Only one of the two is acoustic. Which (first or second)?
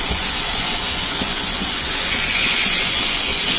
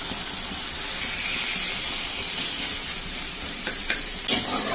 second